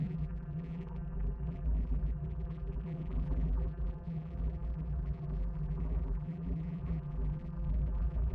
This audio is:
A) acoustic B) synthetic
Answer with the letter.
B